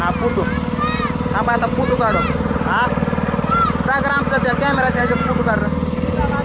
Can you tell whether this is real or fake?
real